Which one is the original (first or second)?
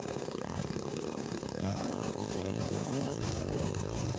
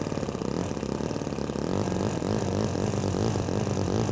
second